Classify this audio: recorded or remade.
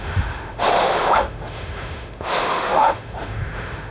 remade